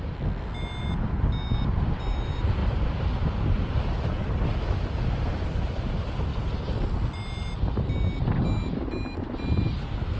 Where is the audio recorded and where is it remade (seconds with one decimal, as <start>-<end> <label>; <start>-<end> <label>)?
0.0-2.6 recorded; 2.6-3.9 remade; 3.9-10.2 recorded